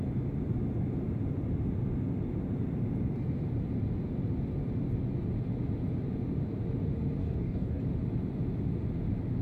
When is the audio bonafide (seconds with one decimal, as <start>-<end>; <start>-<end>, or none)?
0.0-7.2; 7.8-9.4